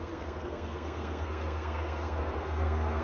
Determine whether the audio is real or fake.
fake